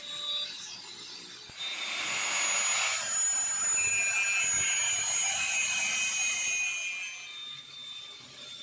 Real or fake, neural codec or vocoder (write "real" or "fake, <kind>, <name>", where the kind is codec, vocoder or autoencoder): real